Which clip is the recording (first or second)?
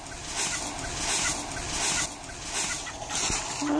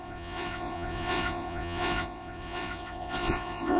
first